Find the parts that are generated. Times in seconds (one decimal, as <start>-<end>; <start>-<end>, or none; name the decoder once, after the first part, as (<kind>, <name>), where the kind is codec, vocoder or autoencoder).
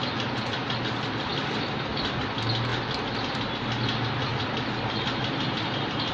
none